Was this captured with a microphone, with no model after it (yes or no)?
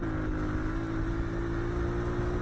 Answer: yes